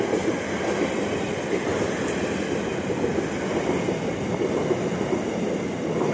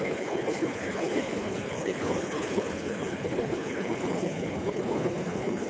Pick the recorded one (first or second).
first